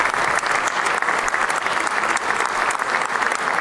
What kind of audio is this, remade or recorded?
recorded